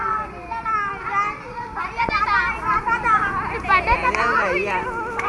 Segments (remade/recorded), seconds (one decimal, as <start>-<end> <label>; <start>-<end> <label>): 0.0-5.3 recorded